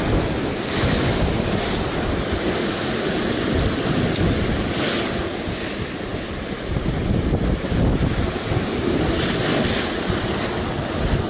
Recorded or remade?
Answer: recorded